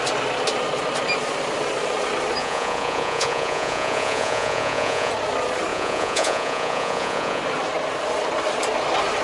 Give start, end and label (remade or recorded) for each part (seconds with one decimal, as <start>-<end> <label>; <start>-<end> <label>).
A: 0.0-2.4 recorded; 2.4-5.1 remade; 5.1-5.7 recorded; 5.7-7.4 remade; 7.4-9.2 recorded